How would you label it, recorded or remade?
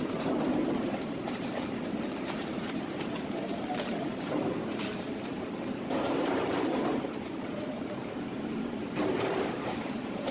remade